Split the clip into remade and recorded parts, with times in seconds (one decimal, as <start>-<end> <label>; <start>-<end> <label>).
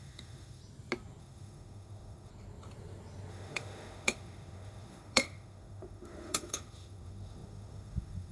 0.0-0.6 remade; 0.6-1.2 recorded; 1.2-2.3 remade; 2.3-3.3 recorded; 3.3-8.3 remade